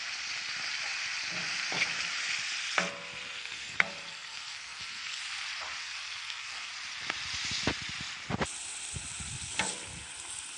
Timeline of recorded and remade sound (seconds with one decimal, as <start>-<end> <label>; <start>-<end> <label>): 0.0-3.4 recorded; 3.4-5.2 remade; 5.2-5.8 recorded; 5.8-6.7 remade; 6.7-10.6 recorded

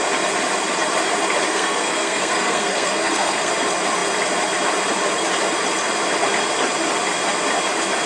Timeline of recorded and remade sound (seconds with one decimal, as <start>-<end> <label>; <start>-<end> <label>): 0.0-1.5 recorded; 1.5-3.5 remade; 3.5-8.1 recorded